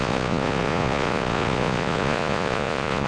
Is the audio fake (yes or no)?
yes